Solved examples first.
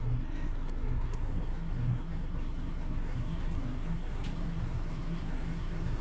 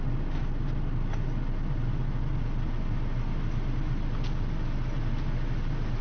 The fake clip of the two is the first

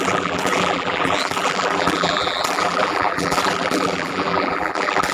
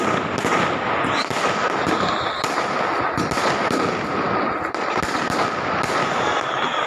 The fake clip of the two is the first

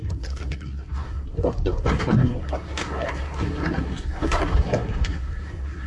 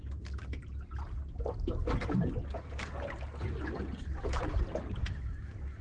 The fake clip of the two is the first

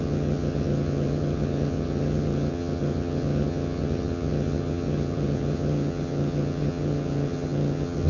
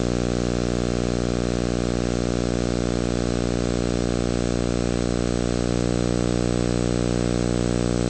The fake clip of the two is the first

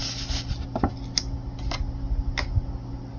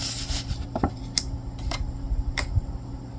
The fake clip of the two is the second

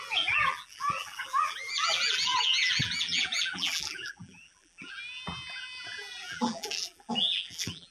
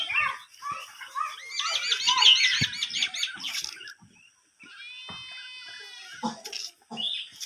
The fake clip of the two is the first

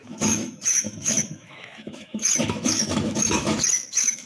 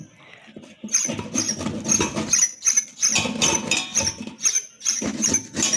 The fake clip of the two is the first